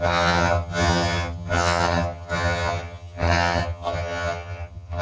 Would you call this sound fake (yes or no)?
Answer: yes